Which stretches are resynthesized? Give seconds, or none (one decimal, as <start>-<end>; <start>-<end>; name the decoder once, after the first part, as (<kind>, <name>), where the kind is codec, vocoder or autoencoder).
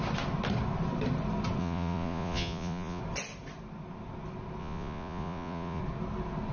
1.6-3.0 (vocoder, Vocos); 4.6-5.8